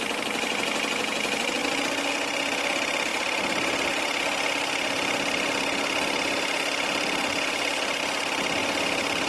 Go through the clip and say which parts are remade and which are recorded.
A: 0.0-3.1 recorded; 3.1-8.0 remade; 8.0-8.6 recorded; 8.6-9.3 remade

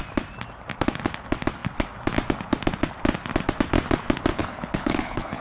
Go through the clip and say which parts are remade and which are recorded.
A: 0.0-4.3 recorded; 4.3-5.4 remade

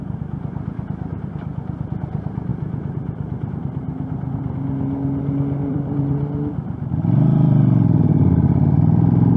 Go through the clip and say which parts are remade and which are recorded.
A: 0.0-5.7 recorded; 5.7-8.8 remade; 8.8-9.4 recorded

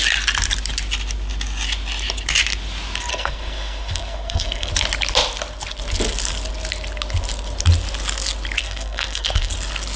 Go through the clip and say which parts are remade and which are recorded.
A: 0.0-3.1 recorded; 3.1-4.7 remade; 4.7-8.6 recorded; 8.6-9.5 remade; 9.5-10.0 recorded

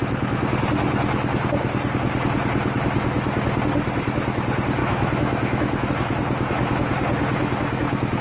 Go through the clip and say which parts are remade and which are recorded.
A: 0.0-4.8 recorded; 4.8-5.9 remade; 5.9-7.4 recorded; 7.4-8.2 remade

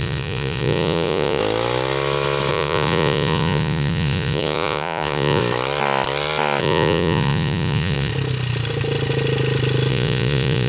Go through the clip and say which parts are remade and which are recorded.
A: 0.0-1.4 remade; 1.4-2.5 recorded; 2.5-5.4 remade; 5.4-6.6 recorded; 6.6-8.1 remade; 8.1-9.9 recorded; 9.9-10.7 remade